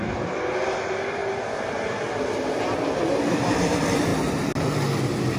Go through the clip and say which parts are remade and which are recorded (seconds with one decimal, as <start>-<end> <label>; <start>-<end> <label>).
0.0-1.2 remade; 1.2-3.3 recorded; 3.3-4.1 remade; 4.1-5.4 recorded